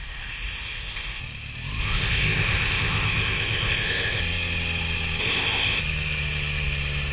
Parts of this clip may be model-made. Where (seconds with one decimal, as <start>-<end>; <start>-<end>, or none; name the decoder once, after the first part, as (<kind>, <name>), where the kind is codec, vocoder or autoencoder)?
0.0-1.2 (codec, ZipCodec); 1.8-4.2; 5.2-5.8